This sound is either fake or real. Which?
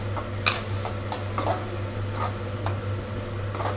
real